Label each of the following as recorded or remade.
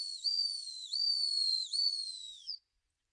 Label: remade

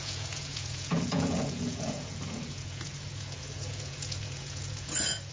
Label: remade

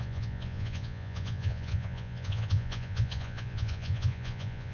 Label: remade